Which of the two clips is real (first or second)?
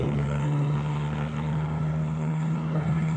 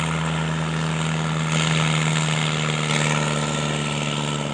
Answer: second